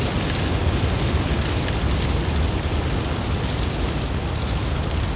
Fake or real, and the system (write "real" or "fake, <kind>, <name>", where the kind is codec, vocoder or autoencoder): real